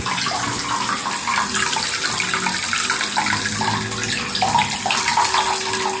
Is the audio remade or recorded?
recorded